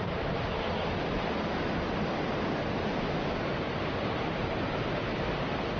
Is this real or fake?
real